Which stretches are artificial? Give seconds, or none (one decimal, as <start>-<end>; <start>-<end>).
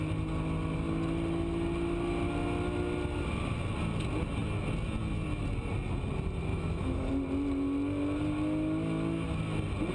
6.5-7.1